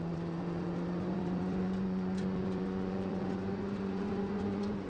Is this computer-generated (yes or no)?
yes